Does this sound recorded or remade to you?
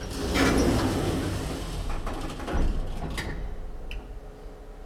recorded